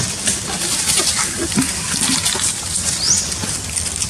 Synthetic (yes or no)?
no